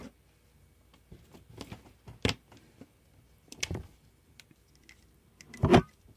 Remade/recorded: recorded